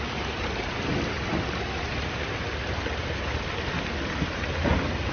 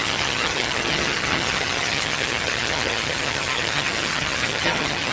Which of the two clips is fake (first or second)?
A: second